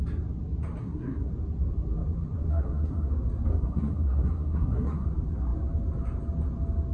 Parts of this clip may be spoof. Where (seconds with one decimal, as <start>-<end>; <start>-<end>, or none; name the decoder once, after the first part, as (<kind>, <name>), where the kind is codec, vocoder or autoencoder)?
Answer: 0.8-1.3 (codec, SNAC); 2.5-3.1; 3.5-5.1

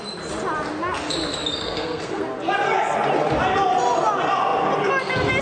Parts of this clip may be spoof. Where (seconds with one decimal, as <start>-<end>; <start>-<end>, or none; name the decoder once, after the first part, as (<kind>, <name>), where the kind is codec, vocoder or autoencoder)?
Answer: 1.6-2.2 (codec, SNAC)

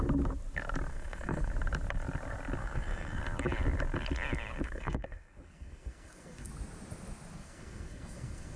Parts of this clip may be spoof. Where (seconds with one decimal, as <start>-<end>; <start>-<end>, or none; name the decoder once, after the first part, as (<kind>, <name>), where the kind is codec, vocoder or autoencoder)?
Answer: 0.9-1.5 (codec, SNAC); 2.6-3.2; 4.6-6.5; 7.4-8.6

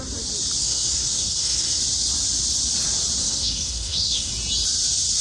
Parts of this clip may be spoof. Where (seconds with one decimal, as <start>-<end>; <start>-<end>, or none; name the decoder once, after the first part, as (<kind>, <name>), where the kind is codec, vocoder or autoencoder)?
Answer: 0.6-1.8 (codec, SNAC); 3.2-4.3